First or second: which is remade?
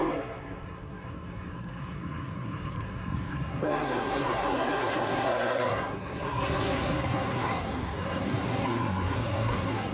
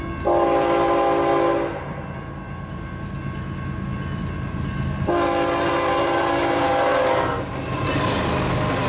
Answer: first